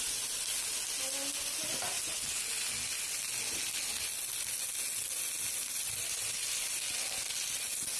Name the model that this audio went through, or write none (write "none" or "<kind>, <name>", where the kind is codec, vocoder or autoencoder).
none